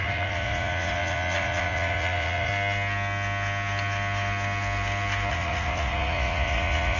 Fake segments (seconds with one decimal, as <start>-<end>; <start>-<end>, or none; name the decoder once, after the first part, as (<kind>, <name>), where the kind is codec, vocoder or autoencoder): 0.0-2.5 (vocoder, Vocos); 5.3-7.0